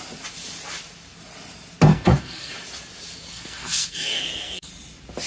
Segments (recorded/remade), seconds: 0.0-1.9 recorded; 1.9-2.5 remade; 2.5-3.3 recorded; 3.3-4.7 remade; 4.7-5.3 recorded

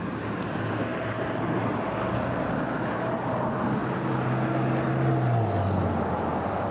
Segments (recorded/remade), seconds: 0.0-6.7 recorded